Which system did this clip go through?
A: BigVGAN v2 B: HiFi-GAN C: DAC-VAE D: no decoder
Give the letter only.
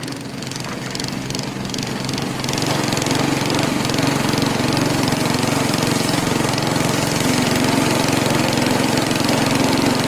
D